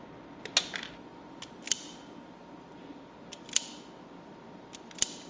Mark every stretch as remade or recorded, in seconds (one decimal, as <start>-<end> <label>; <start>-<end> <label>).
0.0-5.3 recorded